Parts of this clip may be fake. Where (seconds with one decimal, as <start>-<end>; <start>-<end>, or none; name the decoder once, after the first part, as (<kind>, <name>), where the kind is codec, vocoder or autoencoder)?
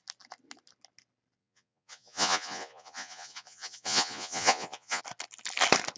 1.4-5.0 (vocoder, Vocos)